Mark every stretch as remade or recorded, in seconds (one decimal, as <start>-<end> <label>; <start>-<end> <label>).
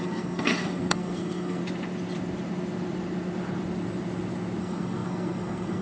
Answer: 0.0-1.6 remade; 1.6-4.6 recorded; 4.6-5.8 remade